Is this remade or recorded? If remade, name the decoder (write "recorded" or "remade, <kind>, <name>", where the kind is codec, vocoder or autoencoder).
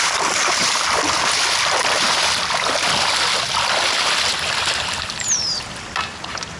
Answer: recorded